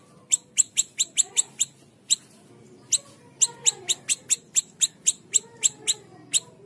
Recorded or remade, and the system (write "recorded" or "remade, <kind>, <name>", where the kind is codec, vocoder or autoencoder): recorded